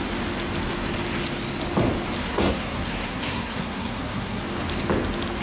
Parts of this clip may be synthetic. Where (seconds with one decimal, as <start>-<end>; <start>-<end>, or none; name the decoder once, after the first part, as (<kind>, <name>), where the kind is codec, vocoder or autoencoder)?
2.2-4.4 (codec, SNAC)